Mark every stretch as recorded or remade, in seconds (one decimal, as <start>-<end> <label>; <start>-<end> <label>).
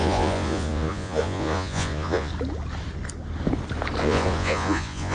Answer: 0.0-2.3 remade; 2.3-4.0 recorded; 4.0-5.1 remade